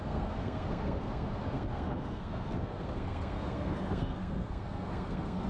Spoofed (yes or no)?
yes